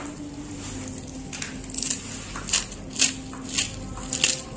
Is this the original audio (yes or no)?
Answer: yes